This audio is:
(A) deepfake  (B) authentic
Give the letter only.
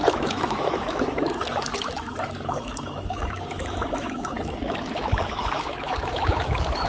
A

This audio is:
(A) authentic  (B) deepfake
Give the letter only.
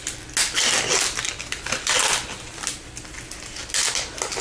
A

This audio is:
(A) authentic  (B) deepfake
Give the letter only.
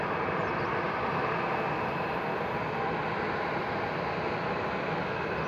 A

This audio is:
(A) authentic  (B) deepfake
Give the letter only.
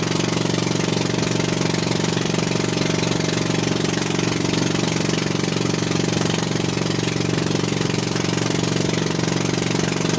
A